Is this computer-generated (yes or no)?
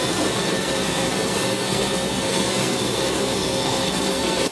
yes